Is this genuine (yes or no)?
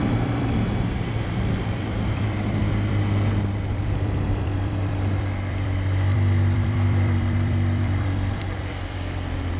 no